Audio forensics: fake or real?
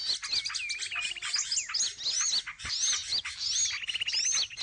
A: real